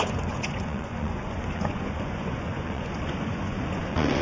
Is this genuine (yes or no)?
no